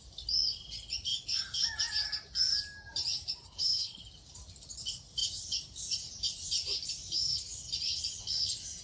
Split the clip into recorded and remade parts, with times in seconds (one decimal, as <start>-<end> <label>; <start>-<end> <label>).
0.0-3.4 recorded; 3.4-4.0 remade; 4.0-8.8 recorded